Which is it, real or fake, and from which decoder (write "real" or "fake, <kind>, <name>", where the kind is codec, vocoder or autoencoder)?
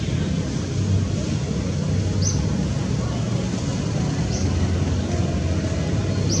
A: real